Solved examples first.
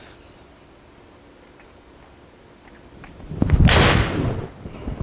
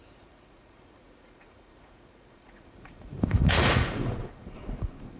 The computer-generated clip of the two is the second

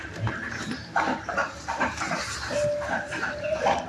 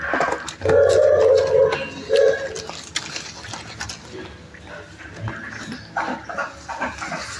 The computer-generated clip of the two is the first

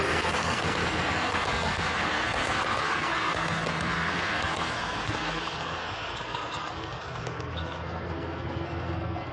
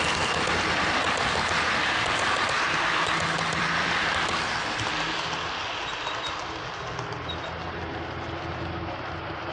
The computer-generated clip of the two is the first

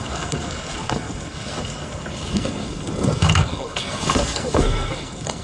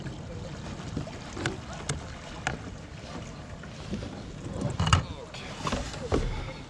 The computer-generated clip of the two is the first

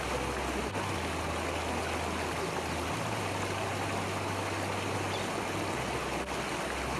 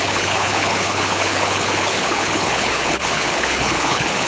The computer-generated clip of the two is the second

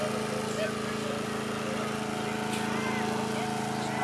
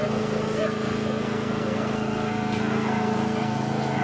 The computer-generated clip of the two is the second